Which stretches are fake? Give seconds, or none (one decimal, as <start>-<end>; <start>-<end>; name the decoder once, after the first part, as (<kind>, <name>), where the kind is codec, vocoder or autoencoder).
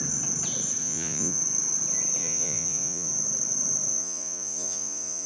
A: 0.8-1.4 (vocoder, Vocos); 2.2-3.1; 3.9-5.3